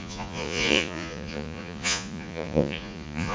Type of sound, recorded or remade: remade